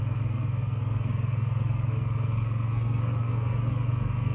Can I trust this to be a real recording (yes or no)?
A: no